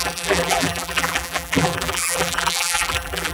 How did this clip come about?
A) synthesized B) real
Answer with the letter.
A